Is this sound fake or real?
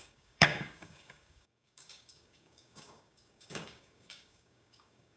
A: fake